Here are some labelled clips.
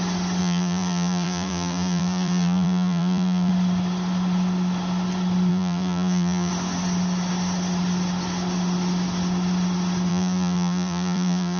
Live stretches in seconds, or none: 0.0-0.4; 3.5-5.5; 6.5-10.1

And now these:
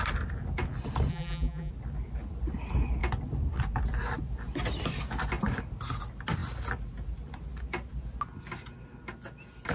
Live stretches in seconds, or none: 0.0-1.1; 1.7-9.7